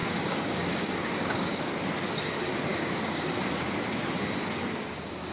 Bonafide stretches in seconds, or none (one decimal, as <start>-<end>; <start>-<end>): 1.8-2.7; 3.4-5.3